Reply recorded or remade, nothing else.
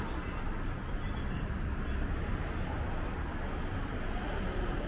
recorded